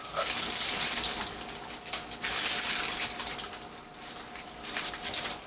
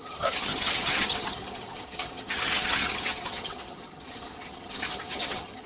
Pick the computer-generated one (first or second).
second